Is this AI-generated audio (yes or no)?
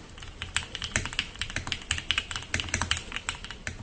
yes